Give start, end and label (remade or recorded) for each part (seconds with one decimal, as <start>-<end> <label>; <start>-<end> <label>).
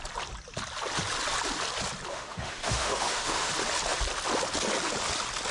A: 0.0-2.1 recorded; 2.1-3.5 remade; 3.5-5.5 recorded